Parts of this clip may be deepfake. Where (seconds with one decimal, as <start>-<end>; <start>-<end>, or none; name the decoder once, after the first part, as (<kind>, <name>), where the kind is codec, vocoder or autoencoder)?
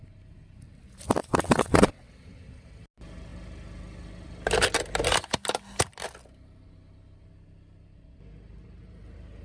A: 1.2-2.1 (vocoder, WaveNeXt)